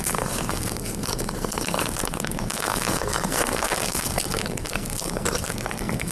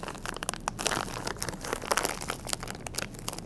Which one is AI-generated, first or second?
first